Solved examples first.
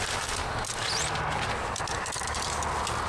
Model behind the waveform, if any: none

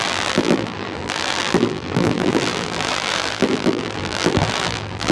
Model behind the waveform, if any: vocoder, BigVGAN v2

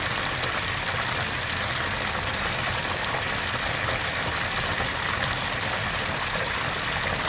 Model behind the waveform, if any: none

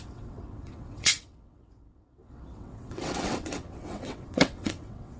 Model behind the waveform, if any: vocoder, WaveNeXt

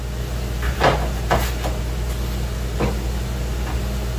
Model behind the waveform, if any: none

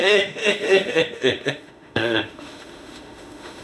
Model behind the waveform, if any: autoencoder, DAC-VAE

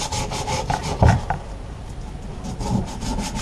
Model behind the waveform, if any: none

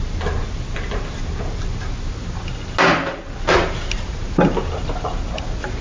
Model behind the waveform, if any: none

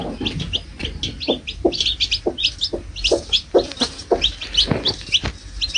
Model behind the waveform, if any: none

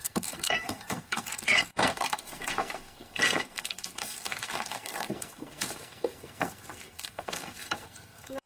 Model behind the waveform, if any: codec, SNAC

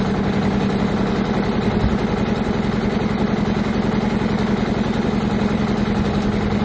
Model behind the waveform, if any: none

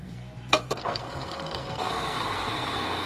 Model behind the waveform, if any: codec, SNAC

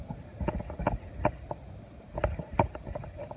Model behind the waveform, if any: none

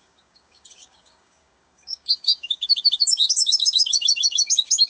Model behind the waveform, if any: codec, DAC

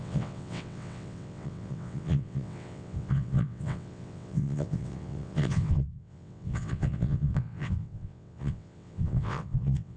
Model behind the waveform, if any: vocoder, WaveNeXt